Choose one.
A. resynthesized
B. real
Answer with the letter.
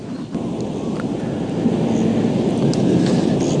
B